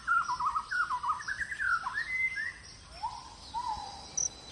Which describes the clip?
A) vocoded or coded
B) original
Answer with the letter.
B